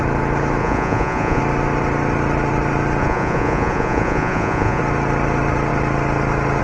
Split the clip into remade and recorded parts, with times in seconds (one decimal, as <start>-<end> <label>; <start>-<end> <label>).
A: 0.0-0.6 recorded; 0.6-1.4 remade; 1.4-3.0 recorded; 3.0-4.8 remade; 4.8-6.6 recorded